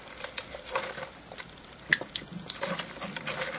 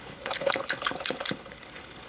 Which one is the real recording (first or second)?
first